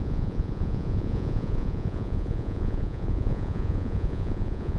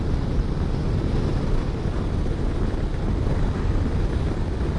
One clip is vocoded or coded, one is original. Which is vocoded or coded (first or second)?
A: first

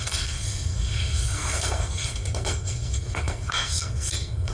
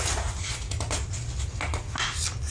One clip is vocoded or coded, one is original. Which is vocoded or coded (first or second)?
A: first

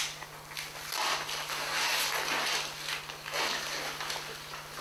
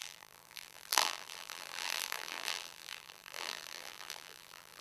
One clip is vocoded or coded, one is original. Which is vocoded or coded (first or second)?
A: second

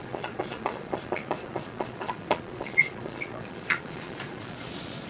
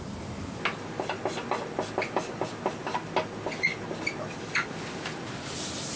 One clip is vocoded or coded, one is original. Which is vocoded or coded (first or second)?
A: first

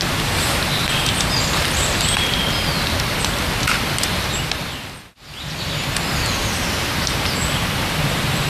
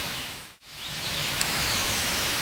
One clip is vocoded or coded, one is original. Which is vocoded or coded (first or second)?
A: second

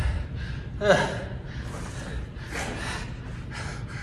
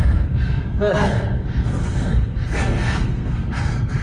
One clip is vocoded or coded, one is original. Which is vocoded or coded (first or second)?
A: second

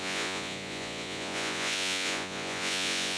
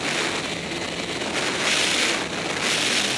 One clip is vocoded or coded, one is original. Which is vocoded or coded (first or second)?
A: first